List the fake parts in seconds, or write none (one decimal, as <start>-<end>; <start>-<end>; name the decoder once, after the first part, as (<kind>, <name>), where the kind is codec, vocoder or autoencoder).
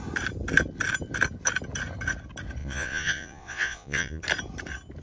2.6-4.2 (vocoder, Vocos)